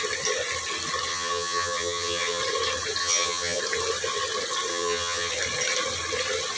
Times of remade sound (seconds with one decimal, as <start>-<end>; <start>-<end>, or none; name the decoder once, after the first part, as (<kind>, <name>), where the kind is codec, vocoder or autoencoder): 1.1-2.4 (vocoder, HiFi-GAN); 3.0-3.6; 4.7-5.3